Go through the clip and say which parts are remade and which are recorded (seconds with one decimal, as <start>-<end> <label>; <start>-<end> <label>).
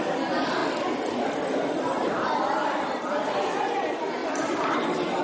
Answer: 0.0-0.6 recorded; 0.6-3.3 remade; 3.3-4.2 recorded; 4.2-5.2 remade